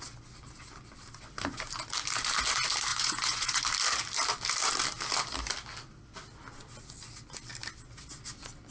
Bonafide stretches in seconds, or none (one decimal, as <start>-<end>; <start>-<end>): 0.0-2.9; 3.6-8.7